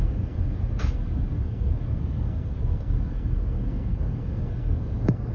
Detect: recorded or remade remade